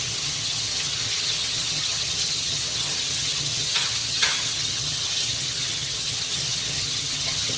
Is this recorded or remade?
remade